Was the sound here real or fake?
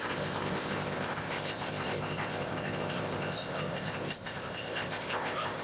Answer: fake